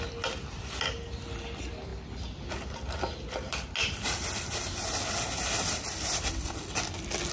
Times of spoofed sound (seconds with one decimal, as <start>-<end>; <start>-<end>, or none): none